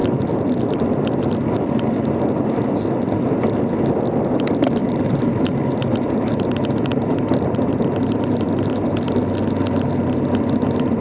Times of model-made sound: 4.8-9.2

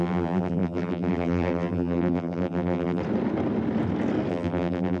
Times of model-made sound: 0.0-3.0; 4.3-5.0

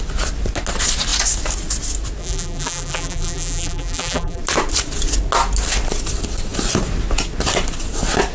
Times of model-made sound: 2.2-4.4

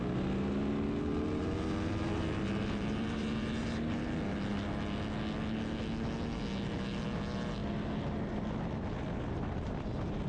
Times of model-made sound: 1.1-4.0

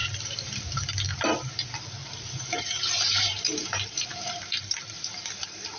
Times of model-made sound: 0.0-0.5; 2.0-5.8

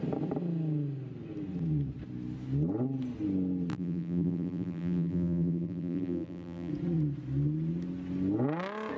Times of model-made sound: 3.7-6.7

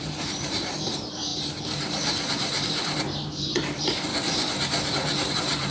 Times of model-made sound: 0.0-4.1; 5.3-5.7